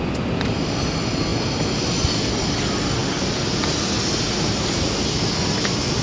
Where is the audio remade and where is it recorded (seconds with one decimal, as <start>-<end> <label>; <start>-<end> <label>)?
0.0-6.0 recorded